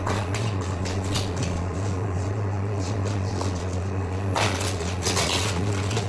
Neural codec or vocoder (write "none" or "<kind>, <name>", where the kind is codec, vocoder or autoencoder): vocoder, Vocos